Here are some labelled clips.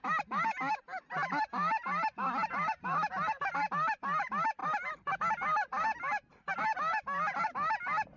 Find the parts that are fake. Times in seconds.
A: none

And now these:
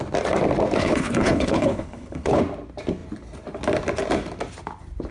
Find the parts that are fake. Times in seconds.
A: 0.8-2.4 (codec, HILCodec)

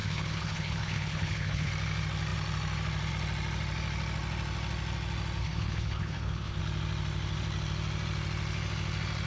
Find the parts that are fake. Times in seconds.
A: 0.0-1.7 (codec, HILCodec); 5.4-6.6